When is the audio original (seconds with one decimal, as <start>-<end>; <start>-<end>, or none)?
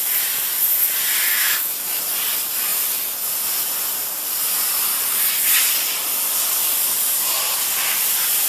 0.0-1.3; 2.0-8.5